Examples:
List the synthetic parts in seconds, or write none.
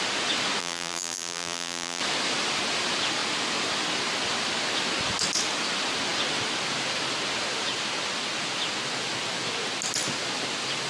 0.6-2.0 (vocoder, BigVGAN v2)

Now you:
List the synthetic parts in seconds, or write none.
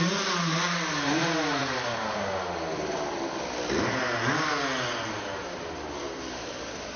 none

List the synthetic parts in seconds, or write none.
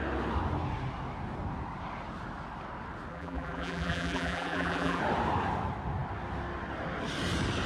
3.1-5.0 (vocoder, BigVGAN v2)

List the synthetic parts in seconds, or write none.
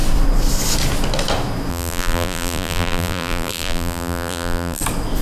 1.7-4.8 (vocoder, BigVGAN v2)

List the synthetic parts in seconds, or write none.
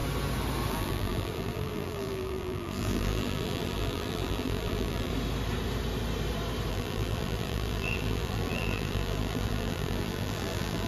0.7-5.1 (vocoder, BigVGAN v2); 6.7-10.9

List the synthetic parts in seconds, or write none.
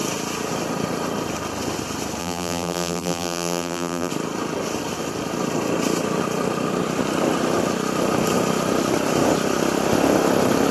2.2-4.1 (vocoder, BigVGAN v2)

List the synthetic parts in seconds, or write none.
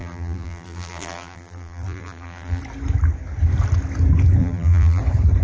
0.0-2.6 (vocoder, BigVGAN v2); 4.4-5.0